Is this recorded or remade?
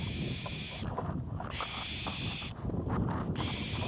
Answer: recorded